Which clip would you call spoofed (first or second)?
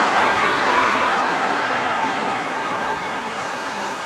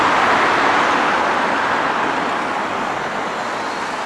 first